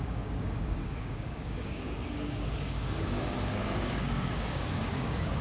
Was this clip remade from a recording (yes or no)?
yes